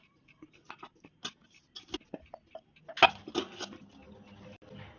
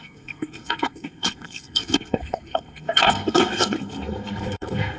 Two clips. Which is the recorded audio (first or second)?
first